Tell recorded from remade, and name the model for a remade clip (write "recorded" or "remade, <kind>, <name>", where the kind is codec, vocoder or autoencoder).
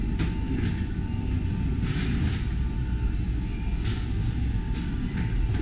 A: recorded